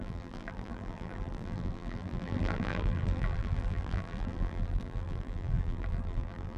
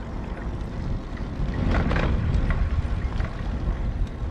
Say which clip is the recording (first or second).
second